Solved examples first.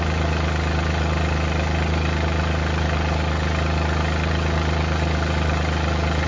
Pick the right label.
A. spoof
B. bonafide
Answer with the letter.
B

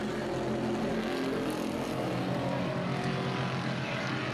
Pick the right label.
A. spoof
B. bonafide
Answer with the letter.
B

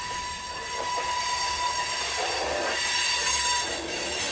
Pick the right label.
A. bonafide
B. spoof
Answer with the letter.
A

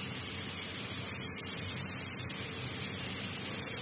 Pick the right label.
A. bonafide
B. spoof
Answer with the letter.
A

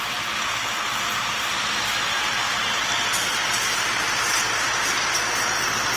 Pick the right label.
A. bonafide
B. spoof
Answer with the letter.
A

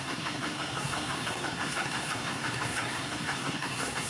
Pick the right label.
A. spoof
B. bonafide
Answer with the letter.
A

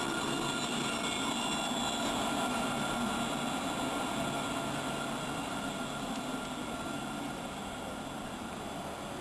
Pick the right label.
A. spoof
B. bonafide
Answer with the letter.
B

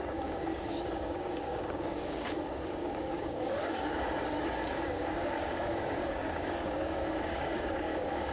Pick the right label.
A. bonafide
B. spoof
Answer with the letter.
B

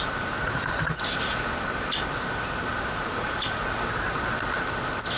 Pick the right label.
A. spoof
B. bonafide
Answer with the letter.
B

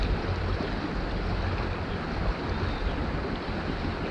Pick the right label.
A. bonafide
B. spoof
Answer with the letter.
A